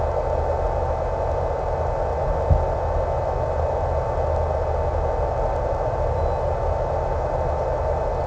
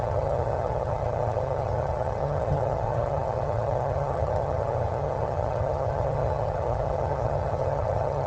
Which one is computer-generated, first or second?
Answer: second